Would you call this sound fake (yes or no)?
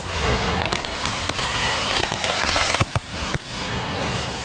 yes